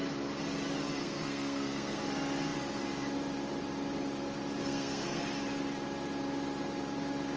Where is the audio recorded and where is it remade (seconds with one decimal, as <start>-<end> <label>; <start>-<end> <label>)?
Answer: 0.0-1.0 recorded; 1.0-2.0 remade; 2.0-4.6 recorded; 4.6-5.2 remade; 5.2-7.4 recorded